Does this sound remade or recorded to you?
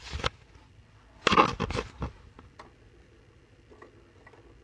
recorded